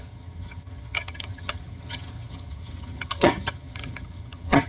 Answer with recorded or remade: remade